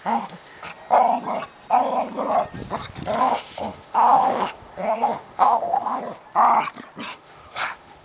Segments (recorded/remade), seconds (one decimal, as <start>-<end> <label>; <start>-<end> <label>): 0.0-0.7 remade; 0.7-3.2 recorded; 3.2-6.0 remade; 6.0-7.1 recorded; 7.1-8.0 remade